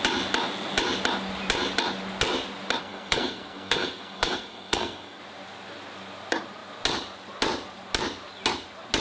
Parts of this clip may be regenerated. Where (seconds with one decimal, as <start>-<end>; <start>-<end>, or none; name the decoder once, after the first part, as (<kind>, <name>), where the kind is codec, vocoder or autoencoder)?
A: 2.8-5.2 (codec, SNAC)